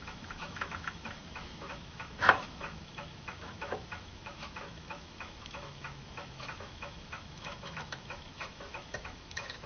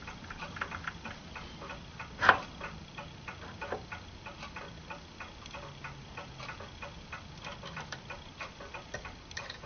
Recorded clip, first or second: second